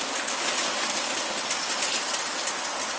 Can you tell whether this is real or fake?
real